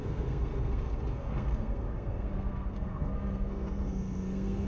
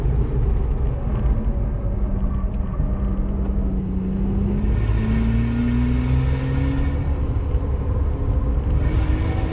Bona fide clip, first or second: second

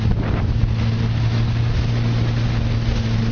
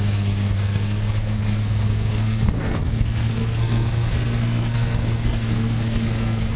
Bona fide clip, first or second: first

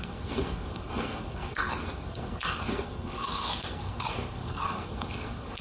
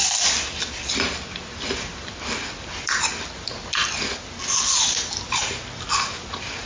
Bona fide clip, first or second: second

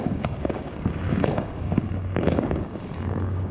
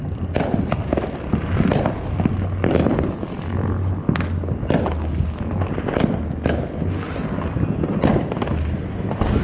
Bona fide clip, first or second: second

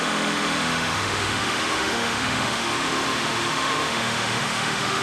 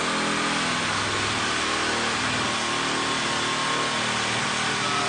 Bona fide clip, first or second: second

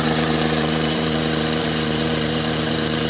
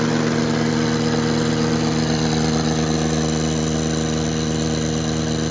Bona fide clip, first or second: second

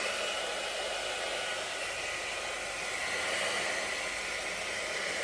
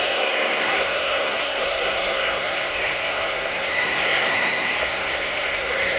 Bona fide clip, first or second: first